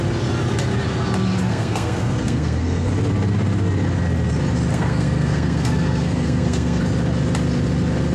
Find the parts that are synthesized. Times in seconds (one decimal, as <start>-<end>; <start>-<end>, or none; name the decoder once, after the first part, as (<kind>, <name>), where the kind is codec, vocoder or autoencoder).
1.5-2.9 (codec, SNAC); 4.7-6.8